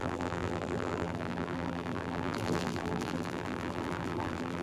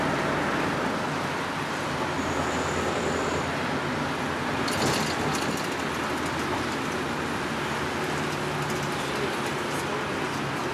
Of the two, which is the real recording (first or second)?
second